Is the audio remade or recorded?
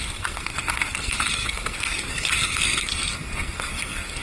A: remade